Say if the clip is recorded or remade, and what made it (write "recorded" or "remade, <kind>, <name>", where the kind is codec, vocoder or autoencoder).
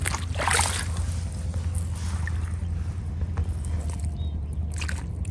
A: recorded